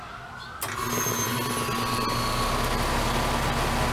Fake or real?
real